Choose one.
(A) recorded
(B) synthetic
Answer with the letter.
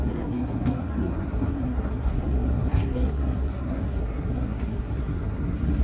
B